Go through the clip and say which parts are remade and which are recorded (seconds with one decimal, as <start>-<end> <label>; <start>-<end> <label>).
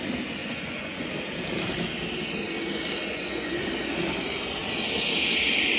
0.0-0.4 recorded; 0.4-1.1 remade; 1.1-3.1 recorded; 3.1-3.7 remade; 3.7-5.8 recorded